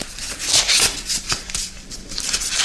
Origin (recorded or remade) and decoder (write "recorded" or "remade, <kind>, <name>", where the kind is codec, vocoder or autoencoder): recorded